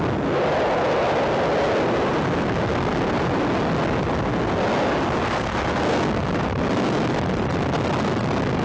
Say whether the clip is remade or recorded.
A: recorded